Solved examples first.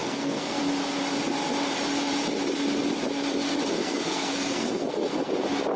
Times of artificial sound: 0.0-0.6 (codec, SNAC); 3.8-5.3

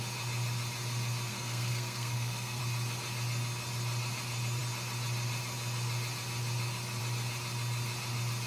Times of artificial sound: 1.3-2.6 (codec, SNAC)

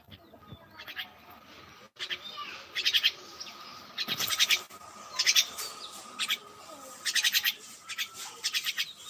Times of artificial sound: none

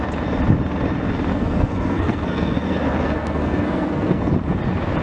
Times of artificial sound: 1.3-4.3 (codec, SNAC)

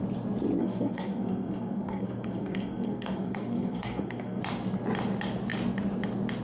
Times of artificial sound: 0.6-4.4 (codec, SNAC)